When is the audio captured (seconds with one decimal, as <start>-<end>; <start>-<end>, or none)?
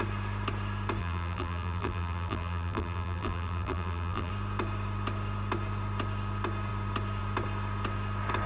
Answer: 0.0-1.0; 4.3-8.5